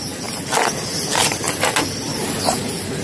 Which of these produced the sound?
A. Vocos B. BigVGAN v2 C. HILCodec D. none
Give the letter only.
D